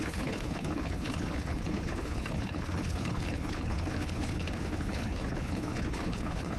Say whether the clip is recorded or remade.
remade